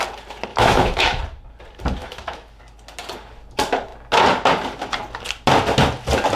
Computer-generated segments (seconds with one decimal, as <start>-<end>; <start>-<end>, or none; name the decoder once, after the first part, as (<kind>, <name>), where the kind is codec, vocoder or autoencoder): 0.5-1.2 (autoencoder, DAC-VAE); 2.0-2.6